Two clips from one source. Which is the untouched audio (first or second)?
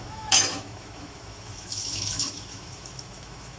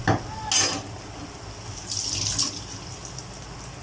second